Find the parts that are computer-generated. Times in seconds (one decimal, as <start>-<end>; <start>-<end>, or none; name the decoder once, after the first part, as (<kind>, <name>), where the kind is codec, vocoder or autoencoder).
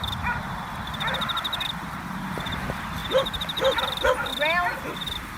none